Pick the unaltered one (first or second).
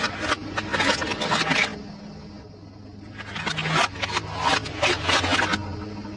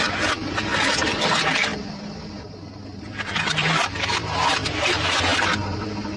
first